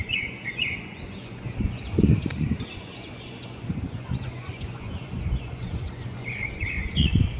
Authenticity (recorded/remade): remade